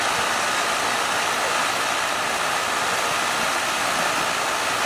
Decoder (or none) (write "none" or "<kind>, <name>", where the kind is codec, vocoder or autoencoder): none